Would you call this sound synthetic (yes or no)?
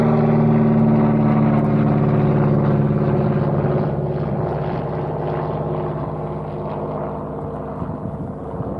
no